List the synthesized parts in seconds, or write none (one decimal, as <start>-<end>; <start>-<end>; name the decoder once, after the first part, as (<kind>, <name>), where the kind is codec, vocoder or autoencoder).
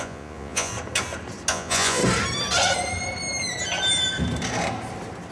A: 0.0-0.7 (vocoder, Vocos); 1.5-2.0